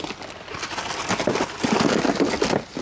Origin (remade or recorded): recorded